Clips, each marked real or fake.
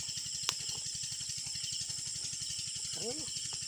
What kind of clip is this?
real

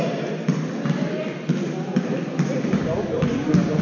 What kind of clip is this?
real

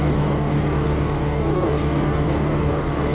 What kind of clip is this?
fake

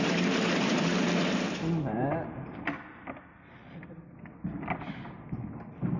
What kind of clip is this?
real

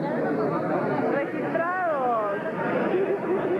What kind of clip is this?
real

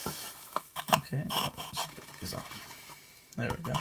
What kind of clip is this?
fake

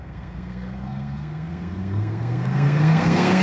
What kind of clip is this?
fake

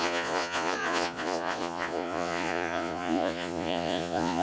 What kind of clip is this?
fake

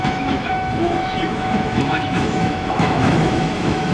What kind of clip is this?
fake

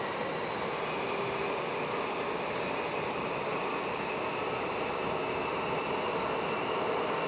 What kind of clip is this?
real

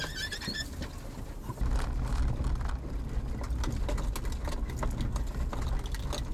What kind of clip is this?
real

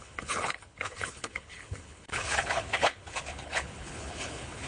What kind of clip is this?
fake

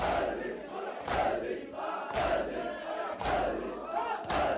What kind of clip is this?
real